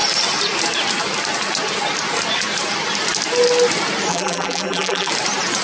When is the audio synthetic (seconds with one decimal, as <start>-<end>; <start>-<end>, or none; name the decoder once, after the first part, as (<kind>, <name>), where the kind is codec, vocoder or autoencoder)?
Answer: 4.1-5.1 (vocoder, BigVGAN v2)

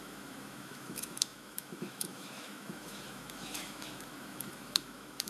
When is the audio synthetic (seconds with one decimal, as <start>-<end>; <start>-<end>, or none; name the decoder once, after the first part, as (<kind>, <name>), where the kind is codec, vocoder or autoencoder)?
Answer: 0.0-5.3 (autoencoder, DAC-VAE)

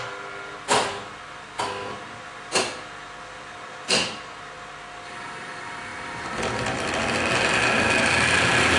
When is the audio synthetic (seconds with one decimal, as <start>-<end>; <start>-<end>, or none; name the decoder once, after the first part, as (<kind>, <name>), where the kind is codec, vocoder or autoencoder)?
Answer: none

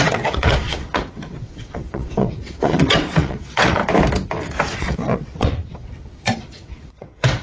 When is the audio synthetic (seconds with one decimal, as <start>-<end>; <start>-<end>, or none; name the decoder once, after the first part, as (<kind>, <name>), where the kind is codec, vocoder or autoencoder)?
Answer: 0.0-3.8 (vocoder, WaveNeXt); 4.7-7.4

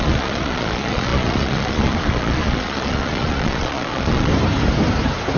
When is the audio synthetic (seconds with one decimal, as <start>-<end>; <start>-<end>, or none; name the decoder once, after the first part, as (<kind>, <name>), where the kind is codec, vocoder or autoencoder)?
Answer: 0.0-4.3 (vocoder, Vocos)

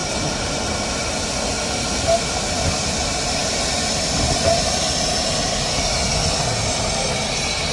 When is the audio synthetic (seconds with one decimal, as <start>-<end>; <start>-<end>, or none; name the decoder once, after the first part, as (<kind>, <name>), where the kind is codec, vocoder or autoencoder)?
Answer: none